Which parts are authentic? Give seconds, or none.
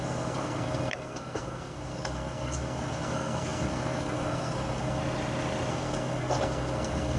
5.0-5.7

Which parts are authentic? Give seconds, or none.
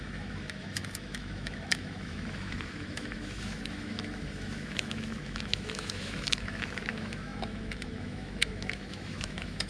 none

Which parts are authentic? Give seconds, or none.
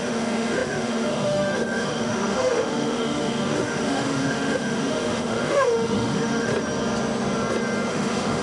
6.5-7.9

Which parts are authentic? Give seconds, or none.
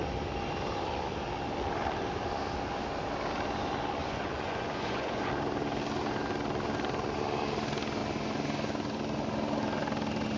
0.0-4.0; 5.3-10.4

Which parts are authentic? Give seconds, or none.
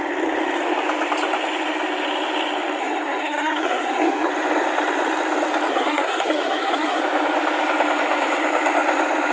0.0-2.8; 4.3-5.7; 7.0-9.3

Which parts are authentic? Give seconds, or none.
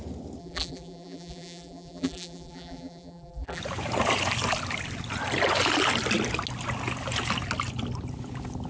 0.0-0.4; 3.6-8.7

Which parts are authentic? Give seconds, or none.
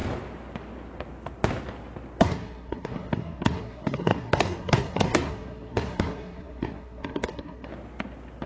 0.0-2.2; 7.7-8.5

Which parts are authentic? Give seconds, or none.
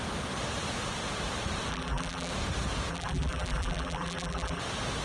0.0-1.7; 2.3-2.9; 4.6-5.0